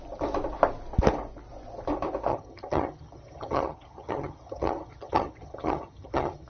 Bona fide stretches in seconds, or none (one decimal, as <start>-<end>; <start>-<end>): 0.0-2.3